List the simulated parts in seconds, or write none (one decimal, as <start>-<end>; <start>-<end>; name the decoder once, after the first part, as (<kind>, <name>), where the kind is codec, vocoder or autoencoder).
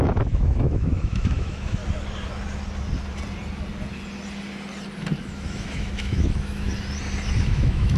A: 0.0-1.8 (autoencoder, DAC-VAE); 5.2-6.7; 7.4-8.0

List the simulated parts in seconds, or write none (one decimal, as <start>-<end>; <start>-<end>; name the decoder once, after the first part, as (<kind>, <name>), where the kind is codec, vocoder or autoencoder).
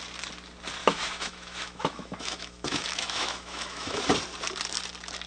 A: 0.8-4.0 (autoencoder, DAC-VAE)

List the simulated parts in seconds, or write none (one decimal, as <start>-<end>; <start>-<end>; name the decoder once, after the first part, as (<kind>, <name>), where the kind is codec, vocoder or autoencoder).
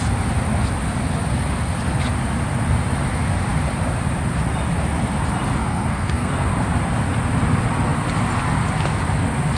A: 5.6-6.3 (codec, SNAC)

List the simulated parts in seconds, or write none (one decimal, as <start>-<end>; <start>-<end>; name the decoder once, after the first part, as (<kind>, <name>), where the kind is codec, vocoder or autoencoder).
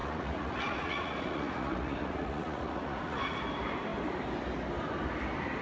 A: 0.0-3.4 (vocoder, Vocos)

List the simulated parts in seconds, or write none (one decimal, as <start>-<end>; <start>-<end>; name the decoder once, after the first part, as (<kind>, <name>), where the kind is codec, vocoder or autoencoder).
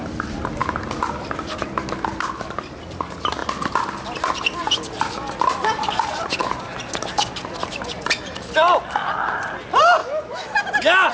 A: 10.0-10.6 (autoencoder, DAC-VAE)